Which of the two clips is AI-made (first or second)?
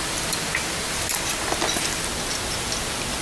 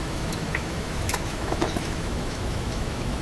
second